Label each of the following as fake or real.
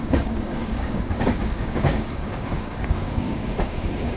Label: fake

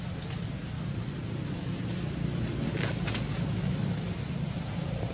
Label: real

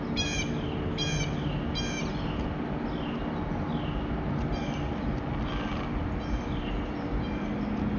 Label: real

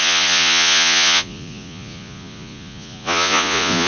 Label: fake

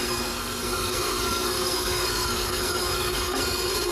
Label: fake